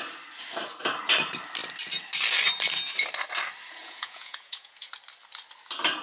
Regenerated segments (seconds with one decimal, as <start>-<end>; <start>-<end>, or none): 3.8-4.9